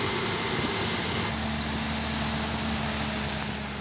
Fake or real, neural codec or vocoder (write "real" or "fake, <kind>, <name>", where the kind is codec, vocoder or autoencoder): real